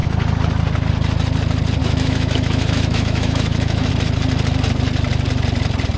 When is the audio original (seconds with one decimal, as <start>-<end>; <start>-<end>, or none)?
0.0-1.8; 3.9-6.0